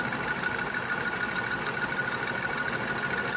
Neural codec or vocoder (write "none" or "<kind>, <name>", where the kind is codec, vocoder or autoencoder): none